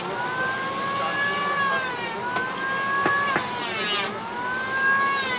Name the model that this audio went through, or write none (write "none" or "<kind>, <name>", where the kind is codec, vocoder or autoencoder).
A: none